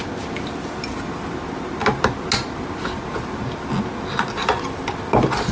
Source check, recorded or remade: recorded